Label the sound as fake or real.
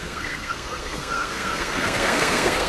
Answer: fake